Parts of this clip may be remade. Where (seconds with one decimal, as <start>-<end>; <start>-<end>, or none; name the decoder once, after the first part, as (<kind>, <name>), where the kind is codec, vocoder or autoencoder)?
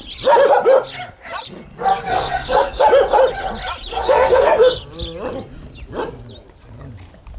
1.9-2.8 (codec, SNAC); 3.9-4.8